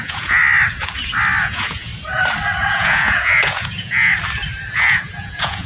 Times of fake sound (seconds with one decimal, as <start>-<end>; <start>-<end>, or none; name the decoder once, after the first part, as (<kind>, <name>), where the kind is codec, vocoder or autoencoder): 0.0-0.4 (vocoder, Vocos); 1.4-1.9; 2.6-4.1; 4.7-5.7